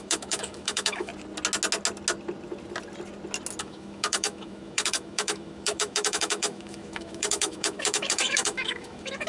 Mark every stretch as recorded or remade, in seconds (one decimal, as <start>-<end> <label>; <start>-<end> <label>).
0.0-1.1 remade; 1.1-3.6 recorded; 3.6-9.3 remade